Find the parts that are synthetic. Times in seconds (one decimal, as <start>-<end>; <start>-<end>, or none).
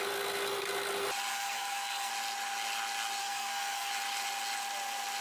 1.3-2.1; 3.2-3.9